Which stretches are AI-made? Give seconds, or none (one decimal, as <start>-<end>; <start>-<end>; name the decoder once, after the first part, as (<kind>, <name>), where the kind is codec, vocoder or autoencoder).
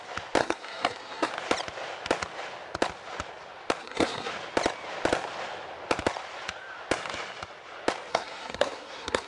0.4-1.3 (codec, SNAC); 3.8-4.3; 8.1-9.3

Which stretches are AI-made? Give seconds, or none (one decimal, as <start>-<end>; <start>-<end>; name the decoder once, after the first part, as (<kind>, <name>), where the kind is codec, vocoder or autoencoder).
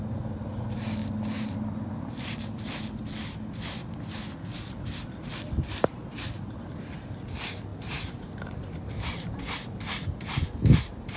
none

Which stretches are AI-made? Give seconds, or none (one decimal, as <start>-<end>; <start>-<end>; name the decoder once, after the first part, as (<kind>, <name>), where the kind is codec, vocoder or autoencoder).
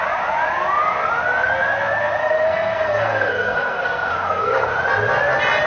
2.2-4.7 (codec, SNAC)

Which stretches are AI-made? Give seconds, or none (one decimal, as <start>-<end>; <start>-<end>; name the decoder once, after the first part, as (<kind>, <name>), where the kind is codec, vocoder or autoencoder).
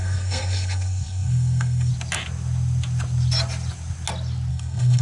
0.0-1.9 (codec, SNAC); 4.5-5.0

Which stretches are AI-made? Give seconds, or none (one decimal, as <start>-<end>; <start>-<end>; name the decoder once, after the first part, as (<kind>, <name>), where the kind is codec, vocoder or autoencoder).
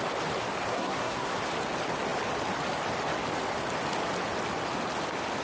0.7-1.4 (codec, SNAC)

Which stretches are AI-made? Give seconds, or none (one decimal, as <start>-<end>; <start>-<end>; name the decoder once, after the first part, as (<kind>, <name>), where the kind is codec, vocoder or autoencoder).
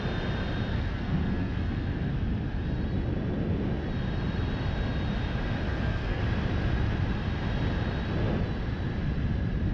0.7-2.1 (codec, SNAC); 5.7-6.2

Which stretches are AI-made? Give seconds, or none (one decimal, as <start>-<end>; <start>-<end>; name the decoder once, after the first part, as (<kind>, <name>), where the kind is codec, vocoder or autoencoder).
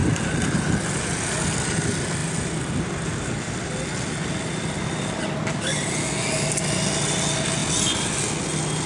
none